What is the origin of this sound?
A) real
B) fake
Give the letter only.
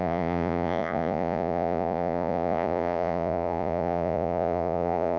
B